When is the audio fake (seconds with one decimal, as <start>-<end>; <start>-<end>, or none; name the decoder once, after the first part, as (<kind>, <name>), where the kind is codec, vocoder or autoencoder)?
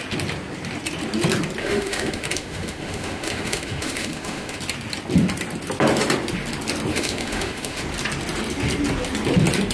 1.6-4.6 (autoencoder, DAC-VAE); 6.9-7.8